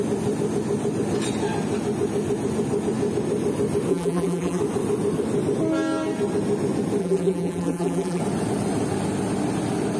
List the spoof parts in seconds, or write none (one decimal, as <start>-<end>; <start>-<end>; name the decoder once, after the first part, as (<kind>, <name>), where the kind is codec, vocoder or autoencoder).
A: 3.9-4.6 (vocoder, BigVGAN v2); 7.0-8.2